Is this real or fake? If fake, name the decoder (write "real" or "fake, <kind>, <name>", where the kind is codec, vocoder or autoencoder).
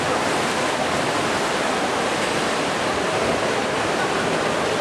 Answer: real